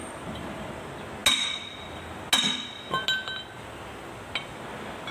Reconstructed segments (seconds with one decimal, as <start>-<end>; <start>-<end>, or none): 0.0-0.7